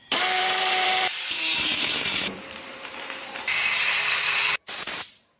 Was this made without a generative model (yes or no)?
no